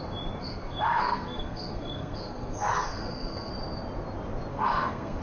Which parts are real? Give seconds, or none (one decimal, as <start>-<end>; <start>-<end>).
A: 0.0-0.4; 3.5-4.5